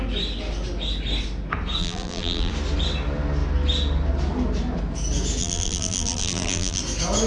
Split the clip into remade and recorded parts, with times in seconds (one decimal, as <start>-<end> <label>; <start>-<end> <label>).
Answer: 0.0-1.8 recorded; 1.8-2.5 remade; 2.5-5.4 recorded; 5.4-6.8 remade; 6.8-7.3 recorded